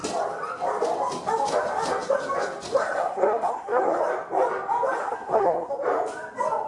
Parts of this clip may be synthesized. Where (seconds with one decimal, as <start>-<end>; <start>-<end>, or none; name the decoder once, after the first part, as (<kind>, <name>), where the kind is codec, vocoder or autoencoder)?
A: 2.8-4.0 (codec, SNAC); 5.0-5.7